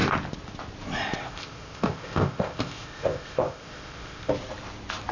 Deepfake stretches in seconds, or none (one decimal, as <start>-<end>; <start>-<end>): 1.2-4.3